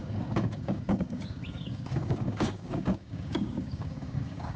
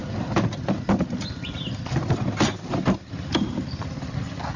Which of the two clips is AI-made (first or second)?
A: first